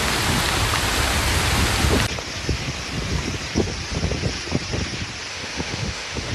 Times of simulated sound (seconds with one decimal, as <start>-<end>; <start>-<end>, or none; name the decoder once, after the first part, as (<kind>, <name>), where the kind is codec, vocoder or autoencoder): 5.3-6.3 (autoencoder, DAC-VAE)